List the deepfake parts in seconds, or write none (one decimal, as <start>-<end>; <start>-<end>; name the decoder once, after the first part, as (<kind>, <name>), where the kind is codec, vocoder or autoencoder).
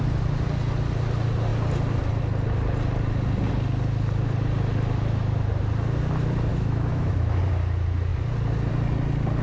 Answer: 6.5-7.4 (autoencoder, DAC-VAE)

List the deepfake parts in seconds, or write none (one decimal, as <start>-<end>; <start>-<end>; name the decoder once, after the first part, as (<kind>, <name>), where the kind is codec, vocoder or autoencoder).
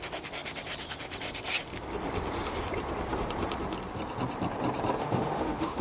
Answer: 5.0-5.8 (autoencoder, DAC-VAE)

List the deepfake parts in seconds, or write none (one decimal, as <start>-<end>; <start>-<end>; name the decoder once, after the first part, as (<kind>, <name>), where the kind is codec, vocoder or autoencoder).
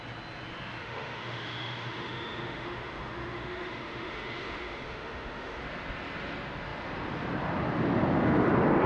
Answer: 0.8-5.6 (autoencoder, DAC-VAE)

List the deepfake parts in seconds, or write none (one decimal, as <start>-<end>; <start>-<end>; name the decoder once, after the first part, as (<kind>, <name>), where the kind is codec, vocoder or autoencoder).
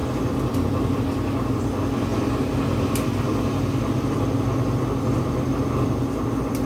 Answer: none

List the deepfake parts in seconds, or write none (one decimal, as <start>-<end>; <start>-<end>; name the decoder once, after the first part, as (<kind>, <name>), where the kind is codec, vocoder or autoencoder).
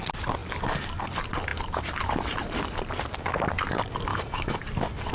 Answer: 4.1-4.6 (autoencoder, DAC-VAE)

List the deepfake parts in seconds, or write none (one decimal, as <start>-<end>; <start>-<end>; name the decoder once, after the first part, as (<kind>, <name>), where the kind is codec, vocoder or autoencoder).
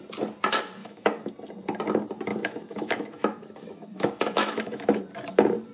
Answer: 0.8-1.3 (autoencoder, DAC-VAE); 2.3-5.0